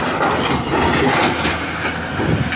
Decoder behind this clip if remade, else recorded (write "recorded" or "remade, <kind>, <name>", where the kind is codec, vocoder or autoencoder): recorded